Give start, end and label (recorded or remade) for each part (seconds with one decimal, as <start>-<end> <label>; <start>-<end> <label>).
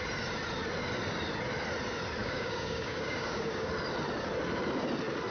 0.0-2.2 recorded; 2.2-3.7 remade; 3.7-5.3 recorded